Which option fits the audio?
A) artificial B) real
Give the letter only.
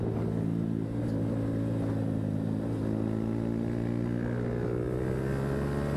B